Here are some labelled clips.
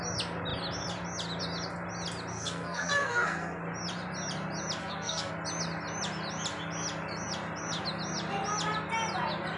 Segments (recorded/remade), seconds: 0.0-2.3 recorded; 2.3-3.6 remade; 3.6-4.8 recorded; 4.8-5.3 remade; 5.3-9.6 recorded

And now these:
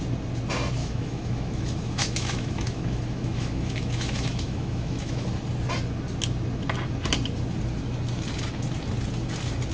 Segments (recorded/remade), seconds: 0.0-0.8 recorded; 0.8-5.3 remade; 5.3-9.7 recorded